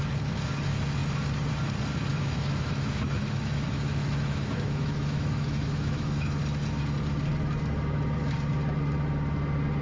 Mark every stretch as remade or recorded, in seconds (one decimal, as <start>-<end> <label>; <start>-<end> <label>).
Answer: 0.0-2.1 recorded; 2.1-6.4 remade; 6.4-9.8 recorded